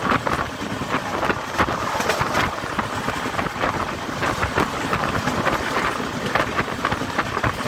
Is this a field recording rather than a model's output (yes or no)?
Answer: yes